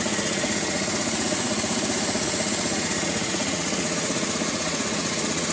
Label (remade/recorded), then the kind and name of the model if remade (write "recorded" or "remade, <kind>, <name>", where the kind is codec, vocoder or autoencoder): remade, vocoder, Vocos